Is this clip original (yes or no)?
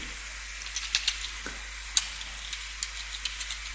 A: yes